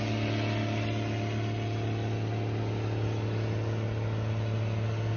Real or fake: real